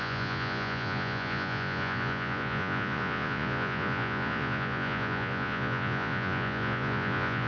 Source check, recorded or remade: remade